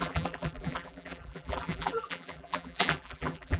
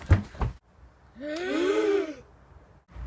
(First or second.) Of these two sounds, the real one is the second